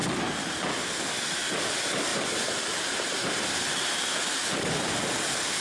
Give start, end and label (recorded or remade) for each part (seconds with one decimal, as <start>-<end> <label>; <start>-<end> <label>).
0.0-2.1 recorded; 2.1-3.9 remade; 3.9-5.6 recorded